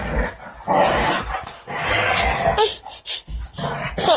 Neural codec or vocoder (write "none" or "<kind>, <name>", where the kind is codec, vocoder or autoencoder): none